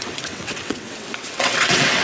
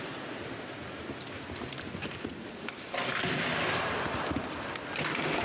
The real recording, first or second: second